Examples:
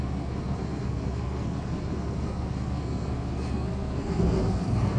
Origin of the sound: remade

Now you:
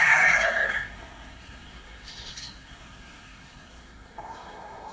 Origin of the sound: remade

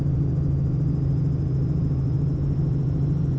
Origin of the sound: remade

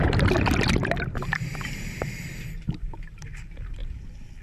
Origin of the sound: recorded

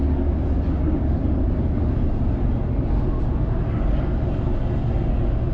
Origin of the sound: recorded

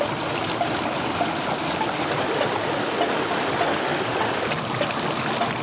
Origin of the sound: recorded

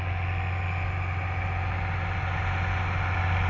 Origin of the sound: recorded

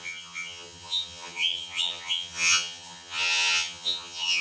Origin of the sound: remade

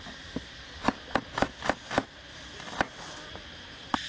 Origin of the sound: recorded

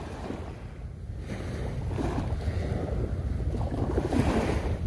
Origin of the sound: recorded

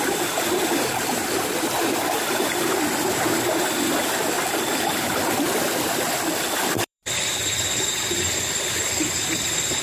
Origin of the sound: remade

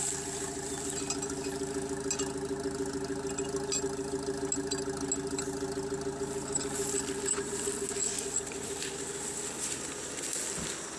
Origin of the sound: recorded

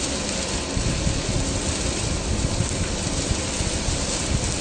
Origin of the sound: recorded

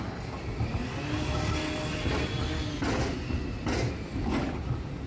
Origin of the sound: recorded